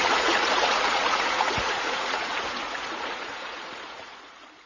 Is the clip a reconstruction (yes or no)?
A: yes